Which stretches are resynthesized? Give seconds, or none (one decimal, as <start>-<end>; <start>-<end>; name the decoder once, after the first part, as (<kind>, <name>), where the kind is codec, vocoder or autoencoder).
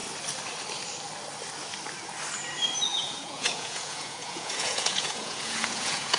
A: 2.9-6.2 (vocoder, Vocos)